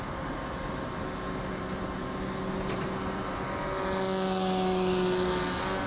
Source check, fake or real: real